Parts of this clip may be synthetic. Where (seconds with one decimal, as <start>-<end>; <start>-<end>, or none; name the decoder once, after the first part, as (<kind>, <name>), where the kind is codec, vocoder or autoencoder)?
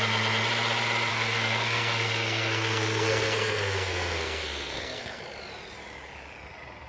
1.1-5.2 (codec, SNAC)